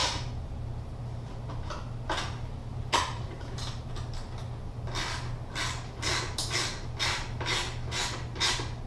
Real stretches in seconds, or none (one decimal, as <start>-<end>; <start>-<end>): 0.0-2.7; 3.7-8.9